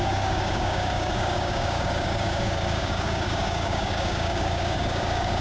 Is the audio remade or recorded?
remade